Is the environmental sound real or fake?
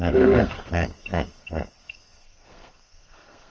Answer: fake